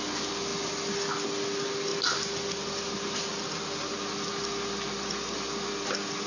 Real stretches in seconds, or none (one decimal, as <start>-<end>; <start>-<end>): 0.0-6.3